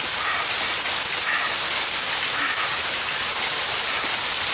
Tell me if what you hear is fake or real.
real